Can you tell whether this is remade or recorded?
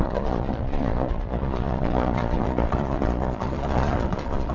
remade